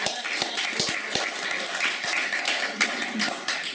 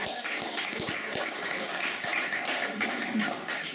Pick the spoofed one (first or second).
second